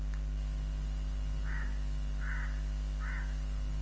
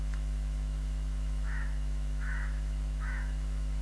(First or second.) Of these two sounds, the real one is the first